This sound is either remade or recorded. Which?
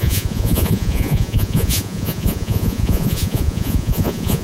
remade